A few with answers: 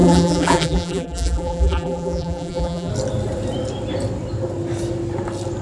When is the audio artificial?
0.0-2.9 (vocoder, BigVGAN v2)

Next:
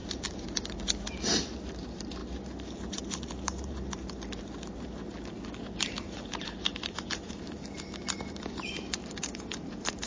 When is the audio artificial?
0.0-10.1 (vocoder, BigVGAN v2)

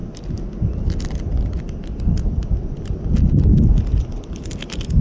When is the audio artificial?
none

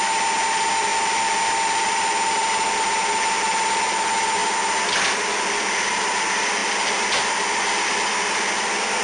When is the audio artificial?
none

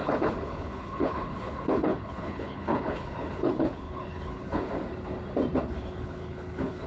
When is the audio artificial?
0.0-4.7 (codec, HILCodec); 5.7-6.9

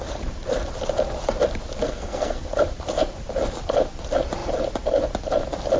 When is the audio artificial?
1.8-2.5 (codec, SNAC)

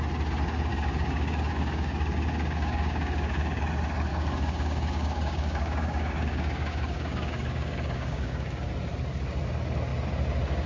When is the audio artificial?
0.7-3.6 (codec, DAC); 4.1-8.7